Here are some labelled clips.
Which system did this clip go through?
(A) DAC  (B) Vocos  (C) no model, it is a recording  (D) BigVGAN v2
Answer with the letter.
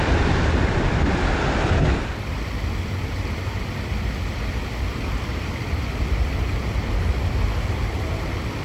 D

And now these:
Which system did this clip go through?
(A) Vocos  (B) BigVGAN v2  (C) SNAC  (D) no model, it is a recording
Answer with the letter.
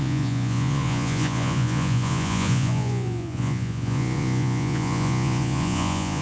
A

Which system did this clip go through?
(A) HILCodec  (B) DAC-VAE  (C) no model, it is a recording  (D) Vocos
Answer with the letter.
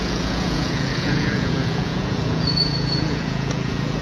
D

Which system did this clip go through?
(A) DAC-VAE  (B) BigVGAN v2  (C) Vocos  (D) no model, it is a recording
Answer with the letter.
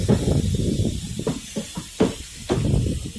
B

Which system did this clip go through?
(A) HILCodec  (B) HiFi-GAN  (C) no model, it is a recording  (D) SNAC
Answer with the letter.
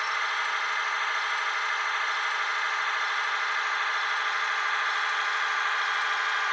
C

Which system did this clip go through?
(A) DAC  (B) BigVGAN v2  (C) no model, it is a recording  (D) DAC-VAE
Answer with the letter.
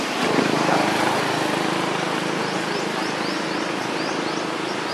C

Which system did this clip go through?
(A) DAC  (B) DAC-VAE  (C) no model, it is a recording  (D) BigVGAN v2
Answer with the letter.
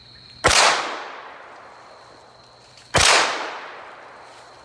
C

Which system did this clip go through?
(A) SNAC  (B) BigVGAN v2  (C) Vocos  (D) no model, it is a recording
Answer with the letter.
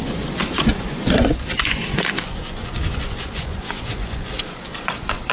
C